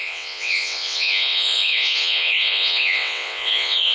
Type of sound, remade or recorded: remade